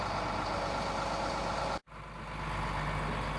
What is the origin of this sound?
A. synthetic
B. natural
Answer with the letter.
B